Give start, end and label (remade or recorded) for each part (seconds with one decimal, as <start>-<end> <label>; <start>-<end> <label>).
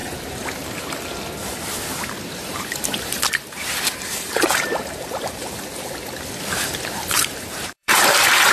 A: 0.0-2.3 recorded; 2.3-5.4 remade; 5.4-7.1 recorded; 7.1-8.5 remade